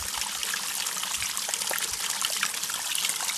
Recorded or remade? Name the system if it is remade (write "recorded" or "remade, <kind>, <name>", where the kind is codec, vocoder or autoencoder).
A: recorded